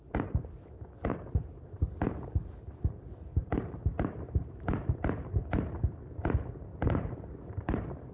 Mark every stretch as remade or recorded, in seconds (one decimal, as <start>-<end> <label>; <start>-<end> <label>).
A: 0.0-1.1 recorded; 1.1-1.8 remade; 1.8-3.3 recorded; 3.3-5.0 remade; 5.0-6.7 recorded; 6.7-8.1 remade